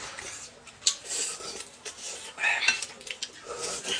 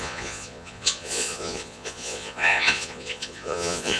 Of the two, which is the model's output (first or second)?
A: second